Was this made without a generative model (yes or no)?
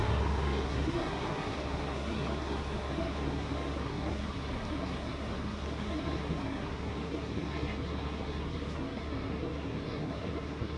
no